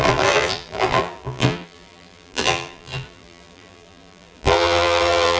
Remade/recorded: remade